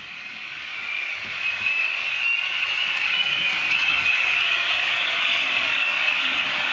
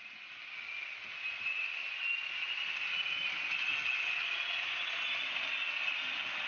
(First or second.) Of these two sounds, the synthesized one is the first